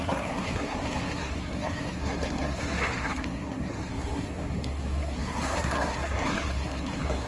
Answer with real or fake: fake